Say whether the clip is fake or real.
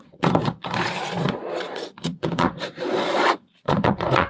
fake